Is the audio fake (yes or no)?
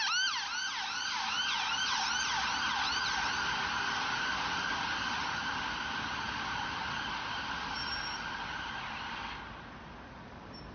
no